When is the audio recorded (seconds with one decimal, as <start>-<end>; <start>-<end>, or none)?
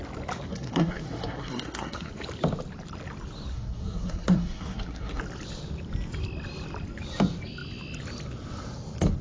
0.0-0.5; 2.1-3.5; 5.2-9.2